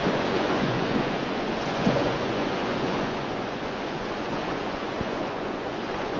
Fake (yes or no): yes